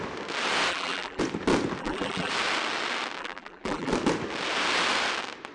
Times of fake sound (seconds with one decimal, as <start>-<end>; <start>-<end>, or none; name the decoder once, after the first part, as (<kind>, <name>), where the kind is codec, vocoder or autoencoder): 0.7-1.2 (vocoder, BigVGAN v2); 1.8-2.3; 3.2-3.9